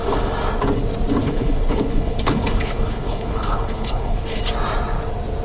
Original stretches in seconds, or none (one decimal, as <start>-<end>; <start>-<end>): 0.0-1.2; 4.4-5.4